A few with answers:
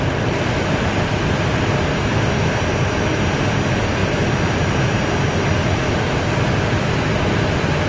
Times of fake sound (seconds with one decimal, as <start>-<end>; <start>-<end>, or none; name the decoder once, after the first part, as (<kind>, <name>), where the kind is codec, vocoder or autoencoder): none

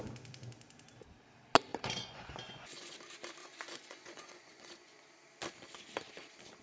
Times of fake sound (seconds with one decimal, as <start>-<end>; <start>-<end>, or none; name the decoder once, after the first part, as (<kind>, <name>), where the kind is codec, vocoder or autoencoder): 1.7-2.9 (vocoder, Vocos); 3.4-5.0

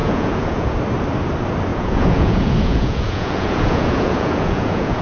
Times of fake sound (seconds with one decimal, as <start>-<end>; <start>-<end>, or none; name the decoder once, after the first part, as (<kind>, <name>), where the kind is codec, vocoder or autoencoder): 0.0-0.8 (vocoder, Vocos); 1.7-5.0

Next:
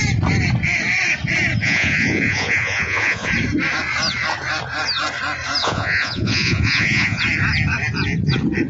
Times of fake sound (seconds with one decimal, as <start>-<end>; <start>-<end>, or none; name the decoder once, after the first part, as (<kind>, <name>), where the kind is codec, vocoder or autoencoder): 1.6-3.3 (vocoder, Vocos); 5.6-7.2